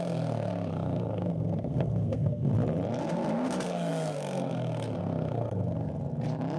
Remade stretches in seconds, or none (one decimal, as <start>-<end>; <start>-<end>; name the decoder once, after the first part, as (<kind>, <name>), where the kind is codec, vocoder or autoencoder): 0.0-2.5 (codec, SNAC); 3.0-5.9

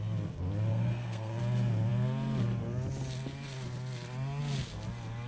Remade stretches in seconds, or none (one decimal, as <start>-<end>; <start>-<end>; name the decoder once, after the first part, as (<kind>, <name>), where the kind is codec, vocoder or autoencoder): 0.7-1.4 (codec, SNAC)

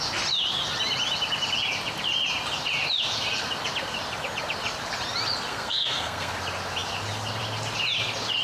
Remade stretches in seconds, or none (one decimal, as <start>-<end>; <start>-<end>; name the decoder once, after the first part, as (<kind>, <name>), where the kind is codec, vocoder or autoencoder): 5.5-6.3 (codec, SNAC)

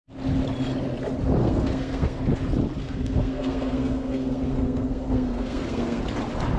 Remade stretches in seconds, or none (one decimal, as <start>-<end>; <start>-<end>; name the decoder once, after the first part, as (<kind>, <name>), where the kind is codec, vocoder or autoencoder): 1.4-2.2 (codec, SNAC); 2.8-6.0

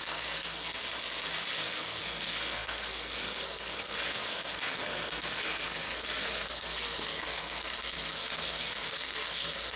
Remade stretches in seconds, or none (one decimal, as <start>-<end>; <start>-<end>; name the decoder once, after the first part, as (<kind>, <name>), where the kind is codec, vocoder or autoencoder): 0.0-0.8 (codec, SNAC); 1.5-9.8

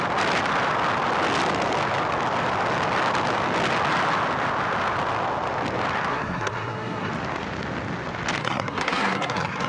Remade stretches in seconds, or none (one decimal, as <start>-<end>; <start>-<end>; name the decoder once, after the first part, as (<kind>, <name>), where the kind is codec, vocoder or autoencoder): 6.1-7.1 (codec, SNAC); 8.4-9.7

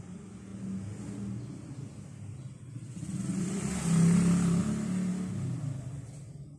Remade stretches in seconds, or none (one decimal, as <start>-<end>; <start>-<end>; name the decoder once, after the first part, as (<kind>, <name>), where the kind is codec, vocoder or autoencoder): none